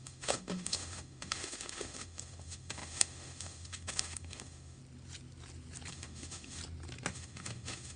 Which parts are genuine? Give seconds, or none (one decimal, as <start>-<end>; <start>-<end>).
4.8-5.9; 6.6-7.1